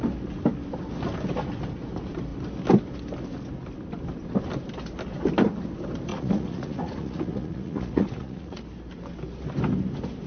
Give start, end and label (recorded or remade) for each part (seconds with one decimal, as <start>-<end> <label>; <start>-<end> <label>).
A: 0.0-6.1 recorded; 6.1-8.6 remade; 8.6-10.3 recorded